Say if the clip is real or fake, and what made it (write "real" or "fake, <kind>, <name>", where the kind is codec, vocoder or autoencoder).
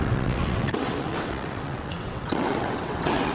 fake, vocoder, WaveNeXt